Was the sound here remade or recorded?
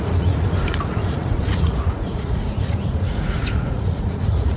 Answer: remade